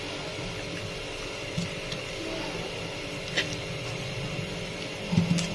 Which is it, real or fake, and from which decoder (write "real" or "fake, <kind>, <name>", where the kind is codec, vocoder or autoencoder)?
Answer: real